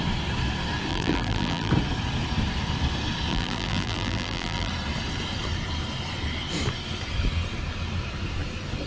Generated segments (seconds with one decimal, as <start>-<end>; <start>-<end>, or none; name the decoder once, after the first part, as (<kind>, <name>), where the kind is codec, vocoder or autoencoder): 0.9-1.7 (vocoder, BigVGAN v2); 3.3-4.7